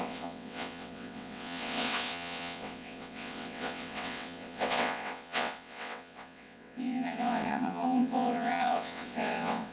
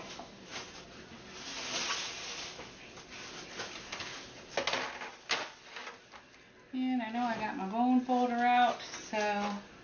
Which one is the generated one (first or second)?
first